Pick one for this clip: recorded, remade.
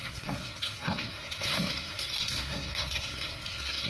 remade